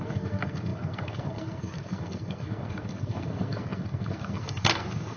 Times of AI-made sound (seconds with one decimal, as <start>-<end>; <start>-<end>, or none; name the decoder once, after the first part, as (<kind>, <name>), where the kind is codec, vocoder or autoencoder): 0.0-5.2 (codec, SNAC)